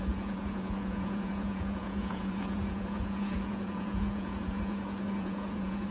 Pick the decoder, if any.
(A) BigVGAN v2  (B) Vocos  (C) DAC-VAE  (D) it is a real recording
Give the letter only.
B